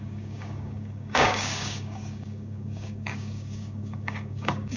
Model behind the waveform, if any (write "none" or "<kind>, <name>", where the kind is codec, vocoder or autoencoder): codec, DAC